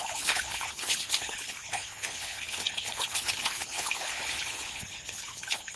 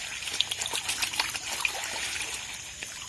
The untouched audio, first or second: second